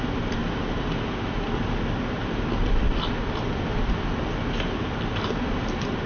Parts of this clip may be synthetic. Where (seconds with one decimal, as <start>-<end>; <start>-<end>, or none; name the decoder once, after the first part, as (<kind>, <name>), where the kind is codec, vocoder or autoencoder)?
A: none